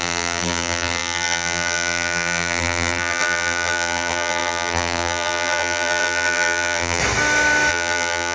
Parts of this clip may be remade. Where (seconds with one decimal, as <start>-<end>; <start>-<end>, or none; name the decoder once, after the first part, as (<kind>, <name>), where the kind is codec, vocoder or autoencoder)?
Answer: 0.0-7.0 (vocoder, BigVGAN v2); 7.7-8.3